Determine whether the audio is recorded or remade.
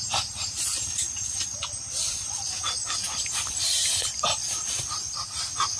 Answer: recorded